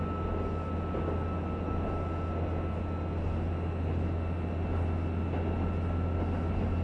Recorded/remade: recorded